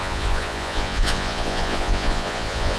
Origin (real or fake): fake